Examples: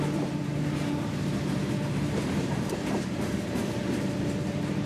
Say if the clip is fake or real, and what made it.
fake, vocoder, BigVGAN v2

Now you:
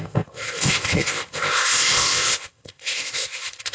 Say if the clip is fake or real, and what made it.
fake, codec, ZipCodec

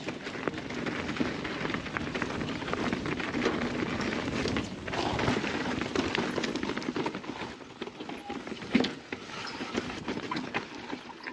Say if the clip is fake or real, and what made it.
real